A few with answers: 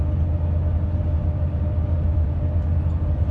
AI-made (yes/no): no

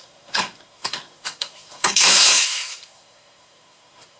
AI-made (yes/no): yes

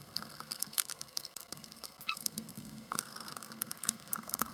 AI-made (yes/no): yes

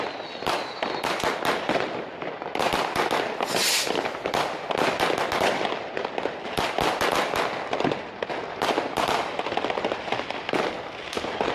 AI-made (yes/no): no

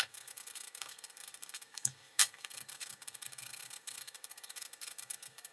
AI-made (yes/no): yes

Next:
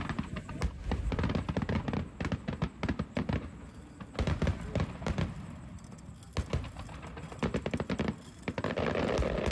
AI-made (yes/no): no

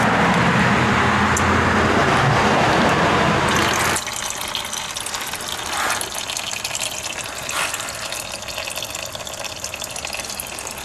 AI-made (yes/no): no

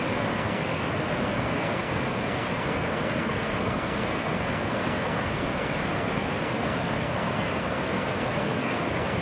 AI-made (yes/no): yes